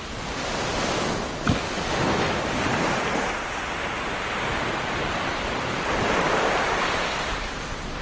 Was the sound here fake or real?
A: real